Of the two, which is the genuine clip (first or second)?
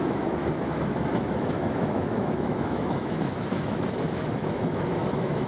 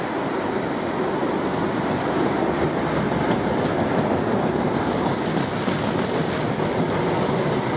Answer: second